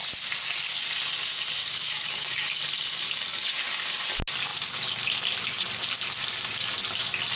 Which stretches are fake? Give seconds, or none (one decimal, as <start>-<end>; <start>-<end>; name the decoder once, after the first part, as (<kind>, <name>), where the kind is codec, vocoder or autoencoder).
1.6-2.6 (codec, DAC)